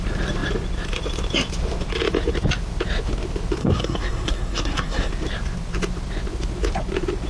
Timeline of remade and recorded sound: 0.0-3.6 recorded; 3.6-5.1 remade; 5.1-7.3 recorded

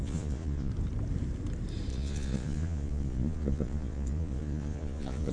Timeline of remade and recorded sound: 0.0-0.7 remade; 0.7-1.9 recorded; 1.9-5.3 remade

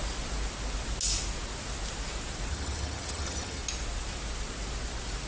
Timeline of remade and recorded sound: 0.0-2.5 recorded; 2.5-3.6 remade; 3.6-5.3 recorded

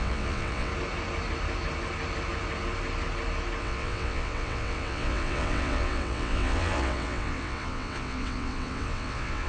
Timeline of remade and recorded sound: 0.0-0.7 remade; 0.7-3.6 recorded; 3.6-9.5 remade

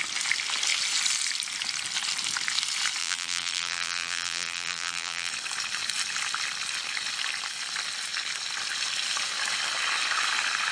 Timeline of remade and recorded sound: 0.0-3.0 recorded; 3.0-5.3 remade; 5.3-10.7 recorded

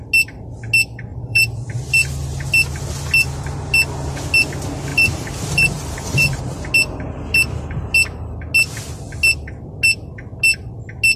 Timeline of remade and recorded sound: 0.0-1.1 recorded; 1.1-1.7 remade; 1.7-4.9 recorded; 4.9-6.4 remade; 6.4-11.2 recorded

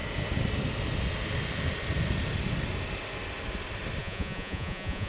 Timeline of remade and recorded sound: 0.0-4.0 recorded; 4.0-5.1 remade